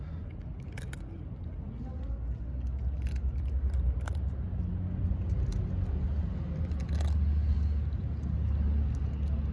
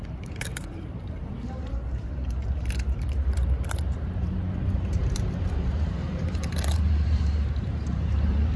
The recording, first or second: first